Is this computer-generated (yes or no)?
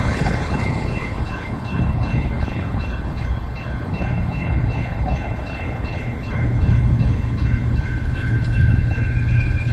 yes